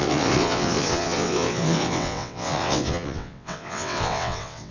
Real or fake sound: fake